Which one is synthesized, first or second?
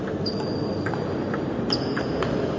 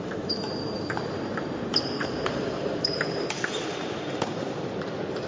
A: second